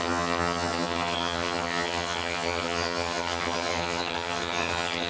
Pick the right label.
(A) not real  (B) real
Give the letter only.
A